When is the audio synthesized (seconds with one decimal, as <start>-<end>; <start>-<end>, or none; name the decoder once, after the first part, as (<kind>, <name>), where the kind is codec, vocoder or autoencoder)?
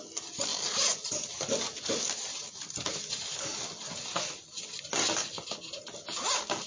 none